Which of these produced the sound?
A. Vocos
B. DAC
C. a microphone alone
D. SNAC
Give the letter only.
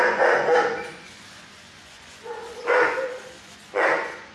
A